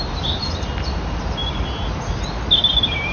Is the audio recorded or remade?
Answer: recorded